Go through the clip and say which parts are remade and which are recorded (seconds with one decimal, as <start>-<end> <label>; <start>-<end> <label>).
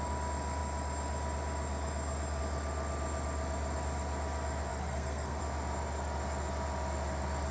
0.0-4.7 recorded; 4.7-5.4 remade; 5.4-7.5 recorded